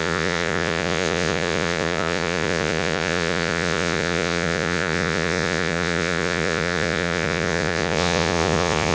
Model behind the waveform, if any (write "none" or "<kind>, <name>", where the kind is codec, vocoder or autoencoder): vocoder, Vocos